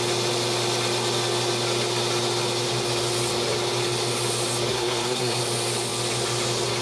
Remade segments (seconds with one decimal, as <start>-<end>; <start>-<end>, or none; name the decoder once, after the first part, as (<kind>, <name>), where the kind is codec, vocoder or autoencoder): 4.7-5.4 (codec, SNAC)